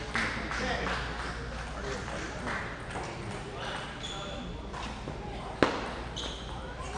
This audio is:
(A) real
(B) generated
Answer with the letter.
A